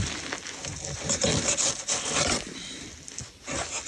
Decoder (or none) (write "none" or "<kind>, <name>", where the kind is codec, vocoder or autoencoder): none